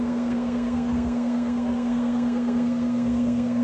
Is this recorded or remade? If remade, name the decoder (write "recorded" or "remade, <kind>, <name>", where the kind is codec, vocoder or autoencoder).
remade, codec, SNAC